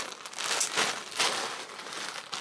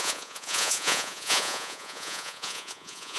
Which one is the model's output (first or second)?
second